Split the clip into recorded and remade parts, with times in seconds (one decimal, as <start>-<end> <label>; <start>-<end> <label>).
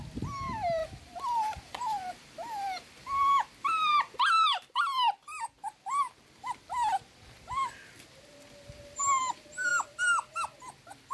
0.0-0.8 recorded; 0.8-5.4 remade; 5.4-11.1 recorded